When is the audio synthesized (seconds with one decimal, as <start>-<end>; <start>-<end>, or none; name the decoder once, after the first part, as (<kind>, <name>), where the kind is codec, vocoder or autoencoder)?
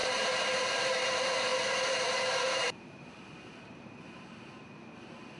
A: 0.0-0.8 (vocoder, BigVGAN v2); 1.5-4.2